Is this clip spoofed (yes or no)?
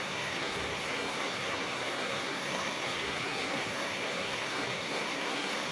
yes